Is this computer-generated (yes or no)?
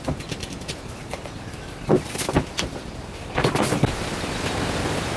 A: no